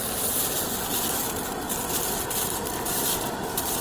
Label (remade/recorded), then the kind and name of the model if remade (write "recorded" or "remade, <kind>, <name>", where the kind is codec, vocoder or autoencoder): recorded